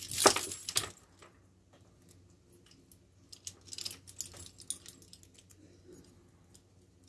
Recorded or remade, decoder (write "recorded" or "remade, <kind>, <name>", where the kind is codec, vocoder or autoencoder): recorded